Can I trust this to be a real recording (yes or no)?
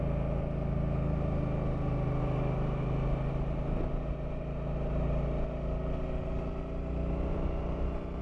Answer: yes